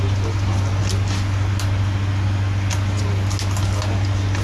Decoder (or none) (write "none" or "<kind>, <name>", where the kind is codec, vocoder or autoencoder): none